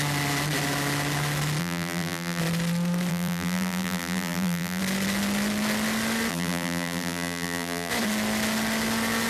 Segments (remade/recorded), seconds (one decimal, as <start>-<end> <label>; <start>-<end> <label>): 0.0-1.6 recorded; 1.6-2.4 remade; 2.4-3.1 recorded; 3.1-4.8 remade; 4.8-6.3 recorded; 6.3-7.9 remade; 7.9-9.3 recorded